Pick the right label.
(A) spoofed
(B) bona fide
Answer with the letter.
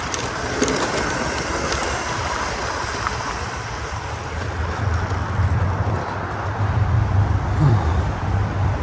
A